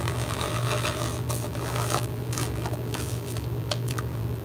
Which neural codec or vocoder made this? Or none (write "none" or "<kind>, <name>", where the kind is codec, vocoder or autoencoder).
vocoder, BigVGAN v2